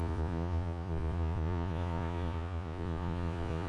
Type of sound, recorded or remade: remade